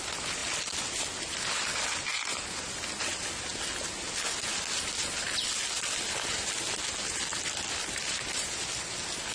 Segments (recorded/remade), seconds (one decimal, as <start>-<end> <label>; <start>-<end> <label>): 0.0-9.3 recorded